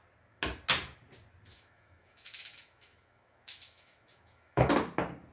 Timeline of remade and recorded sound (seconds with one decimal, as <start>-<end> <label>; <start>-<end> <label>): 0.0-1.5 recorded; 1.5-4.7 remade; 4.7-5.3 recorded